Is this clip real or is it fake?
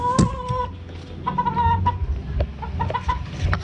real